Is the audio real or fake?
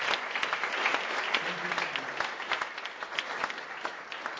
real